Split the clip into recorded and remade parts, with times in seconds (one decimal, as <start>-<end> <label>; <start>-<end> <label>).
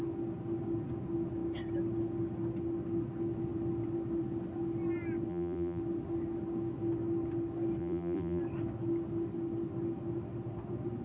0.0-5.3 recorded; 5.3-5.8 remade; 5.8-7.8 recorded; 7.8-8.4 remade; 8.4-11.0 recorded